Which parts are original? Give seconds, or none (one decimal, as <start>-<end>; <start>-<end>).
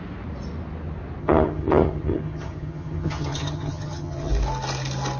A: 0.0-1.2; 4.3-5.2